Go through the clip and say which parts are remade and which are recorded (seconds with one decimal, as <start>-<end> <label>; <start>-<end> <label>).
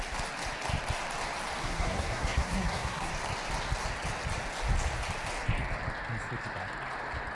0.0-1.6 recorded; 1.6-3.1 remade; 3.1-7.3 recorded